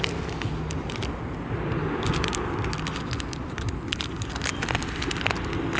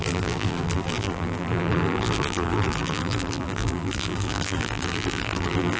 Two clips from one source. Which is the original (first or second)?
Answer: first